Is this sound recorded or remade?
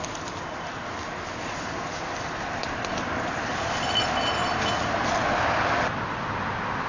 recorded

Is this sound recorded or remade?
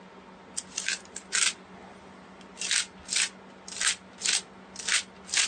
recorded